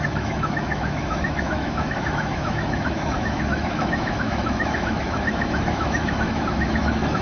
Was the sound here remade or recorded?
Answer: remade